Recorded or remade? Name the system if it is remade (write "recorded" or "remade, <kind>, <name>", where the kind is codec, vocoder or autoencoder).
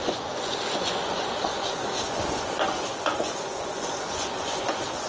remade, vocoder, Vocos